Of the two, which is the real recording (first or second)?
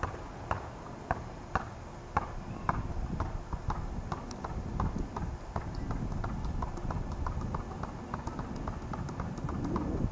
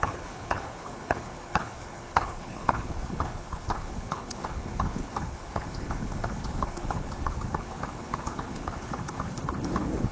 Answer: first